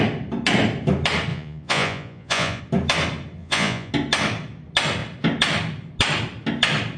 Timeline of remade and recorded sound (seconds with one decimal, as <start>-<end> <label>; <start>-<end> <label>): 0.0-1.3 recorded; 1.3-2.6 remade; 2.6-3.4 recorded; 3.4-3.9 remade; 3.9-7.0 recorded